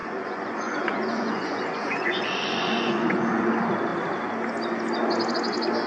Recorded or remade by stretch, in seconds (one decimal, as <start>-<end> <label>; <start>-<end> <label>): 0.0-3.5 remade; 3.5-5.9 recorded